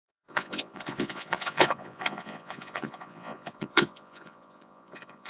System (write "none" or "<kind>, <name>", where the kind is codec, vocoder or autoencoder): vocoder, Vocos